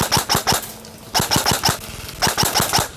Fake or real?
real